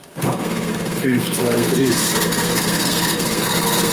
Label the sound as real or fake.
fake